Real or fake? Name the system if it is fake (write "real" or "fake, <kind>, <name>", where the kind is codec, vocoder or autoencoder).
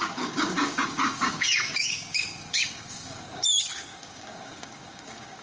fake, codec, DAC